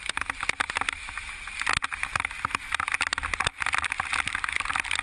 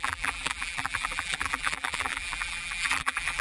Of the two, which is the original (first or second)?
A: first